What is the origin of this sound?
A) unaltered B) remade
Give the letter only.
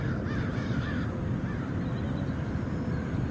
A